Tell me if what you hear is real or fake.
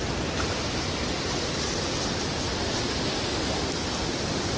real